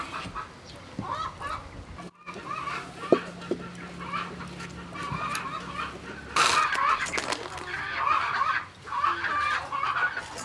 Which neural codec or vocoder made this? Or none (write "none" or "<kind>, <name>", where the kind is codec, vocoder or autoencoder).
none